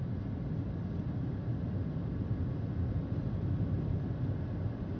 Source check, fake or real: real